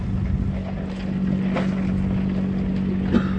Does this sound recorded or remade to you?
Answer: recorded